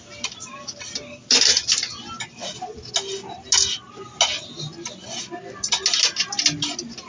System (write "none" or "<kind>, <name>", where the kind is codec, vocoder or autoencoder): none